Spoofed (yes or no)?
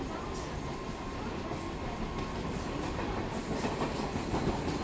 no